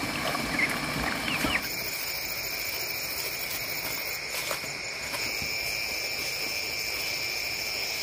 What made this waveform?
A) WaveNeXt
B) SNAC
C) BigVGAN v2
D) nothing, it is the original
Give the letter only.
D